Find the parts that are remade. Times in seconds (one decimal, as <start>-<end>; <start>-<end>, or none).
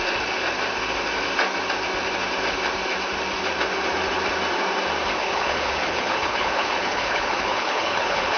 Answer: 5.2-8.4